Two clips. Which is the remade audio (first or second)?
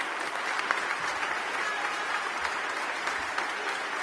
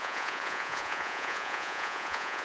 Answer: second